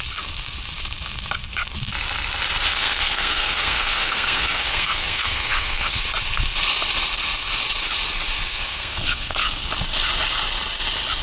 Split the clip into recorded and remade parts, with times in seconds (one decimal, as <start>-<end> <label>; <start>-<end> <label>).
0.0-2.7 recorded; 2.7-6.0 remade; 6.0-8.5 recorded; 8.5-9.7 remade; 9.7-11.2 recorded